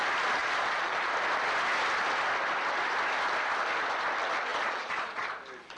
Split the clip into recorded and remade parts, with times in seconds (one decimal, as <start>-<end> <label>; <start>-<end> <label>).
0.0-0.4 recorded; 0.4-1.1 remade; 1.1-4.5 recorded; 4.5-5.3 remade; 5.3-5.8 recorded